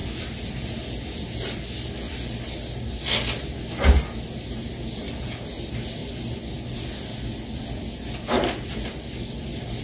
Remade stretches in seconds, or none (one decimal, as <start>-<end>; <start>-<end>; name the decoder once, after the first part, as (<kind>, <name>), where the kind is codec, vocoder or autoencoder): none